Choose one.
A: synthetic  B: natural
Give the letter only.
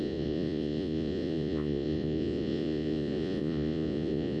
A